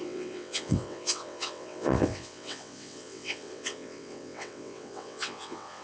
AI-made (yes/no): yes